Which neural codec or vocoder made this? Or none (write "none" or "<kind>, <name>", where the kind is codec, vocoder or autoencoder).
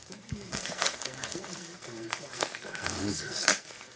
codec, SNAC